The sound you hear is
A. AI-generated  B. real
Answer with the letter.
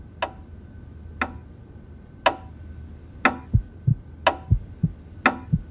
B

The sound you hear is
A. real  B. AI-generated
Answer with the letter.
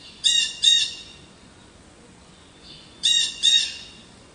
B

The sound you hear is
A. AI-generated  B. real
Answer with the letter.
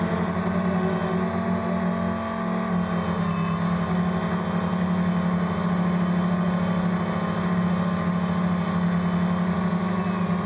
B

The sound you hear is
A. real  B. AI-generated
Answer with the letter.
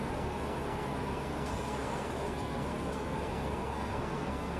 B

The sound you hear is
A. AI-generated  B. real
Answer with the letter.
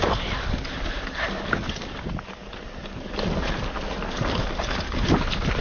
B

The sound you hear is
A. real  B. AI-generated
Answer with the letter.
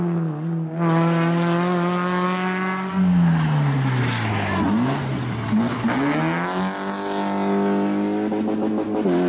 A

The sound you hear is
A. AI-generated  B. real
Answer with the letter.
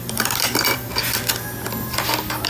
A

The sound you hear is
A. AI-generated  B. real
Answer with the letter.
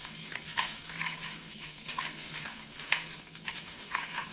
A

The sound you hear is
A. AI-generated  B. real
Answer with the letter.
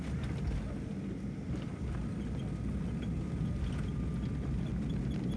B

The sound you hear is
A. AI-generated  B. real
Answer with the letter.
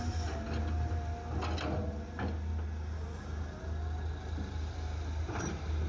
B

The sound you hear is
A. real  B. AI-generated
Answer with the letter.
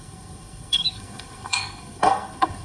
B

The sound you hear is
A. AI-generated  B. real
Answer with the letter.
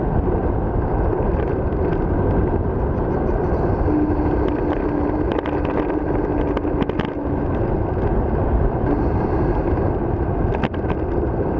B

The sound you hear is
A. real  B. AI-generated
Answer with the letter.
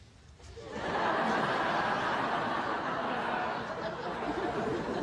A